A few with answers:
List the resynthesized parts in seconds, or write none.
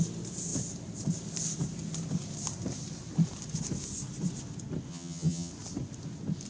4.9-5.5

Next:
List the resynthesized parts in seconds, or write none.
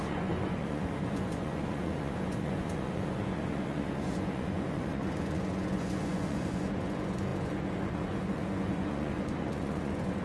0.0-10.2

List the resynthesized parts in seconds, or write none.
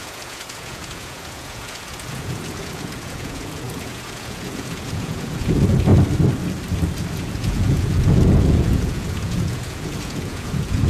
0.0-5.9; 7.1-10.9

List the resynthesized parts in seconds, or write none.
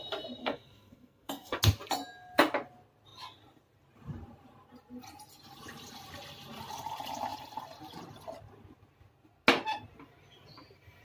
0.4-1.6